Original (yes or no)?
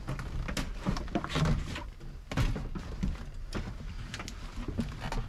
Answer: yes